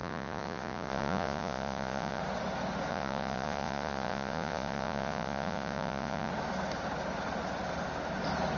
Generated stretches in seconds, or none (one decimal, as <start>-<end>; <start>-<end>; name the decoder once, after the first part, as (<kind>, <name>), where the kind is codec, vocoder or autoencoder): 0.0-2.2 (vocoder, Vocos); 2.9-6.3